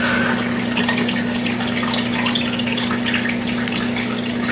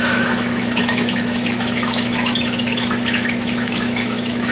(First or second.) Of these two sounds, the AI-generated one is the second